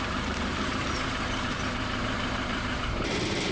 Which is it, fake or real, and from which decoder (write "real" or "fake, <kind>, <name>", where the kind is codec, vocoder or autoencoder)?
fake, vocoder, BigVGAN v2